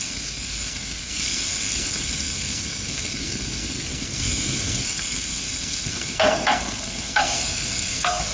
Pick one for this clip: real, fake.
fake